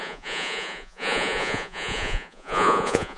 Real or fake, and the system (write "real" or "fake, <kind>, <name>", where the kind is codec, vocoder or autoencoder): fake, vocoder, Vocos